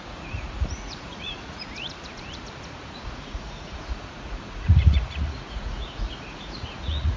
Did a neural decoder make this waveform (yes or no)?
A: yes